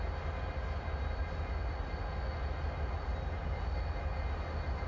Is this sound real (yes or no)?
yes